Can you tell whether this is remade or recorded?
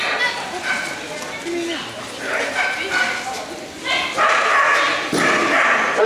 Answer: recorded